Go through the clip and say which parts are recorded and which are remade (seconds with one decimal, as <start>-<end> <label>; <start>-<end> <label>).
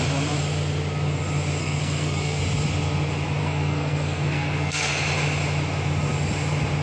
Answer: 0.0-1.6 recorded; 1.6-2.4 remade; 2.4-3.4 recorded; 3.4-4.9 remade; 4.9-6.8 recorded